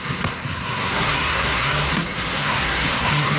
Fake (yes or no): yes